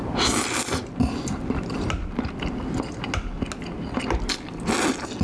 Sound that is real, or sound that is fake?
real